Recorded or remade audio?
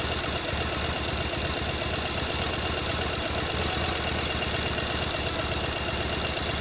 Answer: recorded